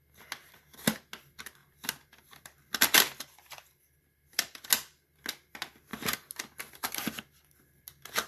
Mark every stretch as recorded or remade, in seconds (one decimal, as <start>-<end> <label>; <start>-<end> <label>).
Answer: 0.0-1.6 recorded; 1.6-4.7 remade; 4.7-8.3 recorded